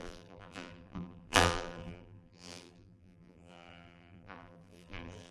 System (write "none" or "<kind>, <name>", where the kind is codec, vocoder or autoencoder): vocoder, BigVGAN v2